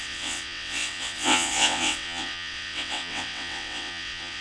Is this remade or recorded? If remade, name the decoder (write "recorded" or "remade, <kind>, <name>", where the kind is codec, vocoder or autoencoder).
remade, vocoder, WaveNeXt